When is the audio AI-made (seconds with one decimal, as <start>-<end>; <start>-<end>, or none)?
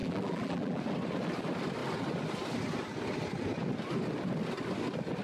0.0-0.8